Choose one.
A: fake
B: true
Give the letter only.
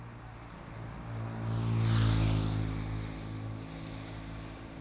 B